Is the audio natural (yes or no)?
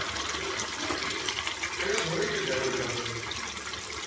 yes